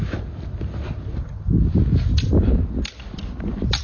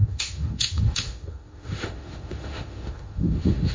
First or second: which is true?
first